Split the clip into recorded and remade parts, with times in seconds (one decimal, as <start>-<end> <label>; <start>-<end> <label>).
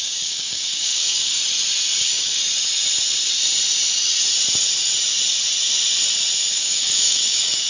0.0-1.4 remade; 1.4-2.0 recorded; 2.0-2.4 remade; 2.4-6.5 recorded; 6.5-7.7 remade